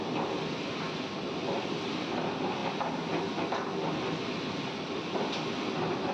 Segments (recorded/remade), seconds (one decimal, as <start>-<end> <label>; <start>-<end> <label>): 0.0-6.1 recorded